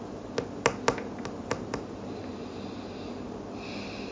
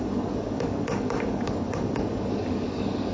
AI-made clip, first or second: second